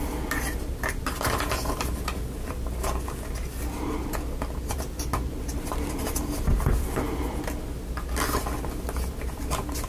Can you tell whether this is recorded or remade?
recorded